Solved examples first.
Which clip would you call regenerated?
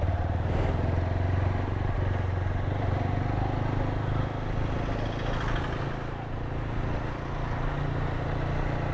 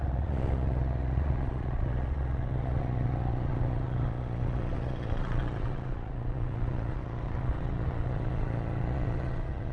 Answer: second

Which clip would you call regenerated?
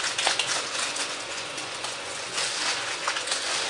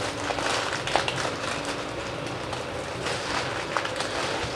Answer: first